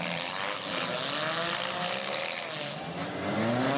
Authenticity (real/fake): real